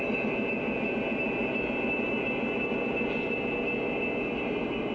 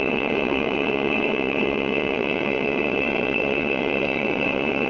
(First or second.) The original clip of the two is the first